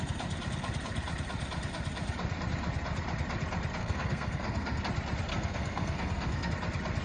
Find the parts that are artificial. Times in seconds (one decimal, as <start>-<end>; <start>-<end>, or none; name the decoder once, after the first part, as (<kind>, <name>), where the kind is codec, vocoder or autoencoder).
3.8-4.8 (codec, SNAC); 5.3-6.5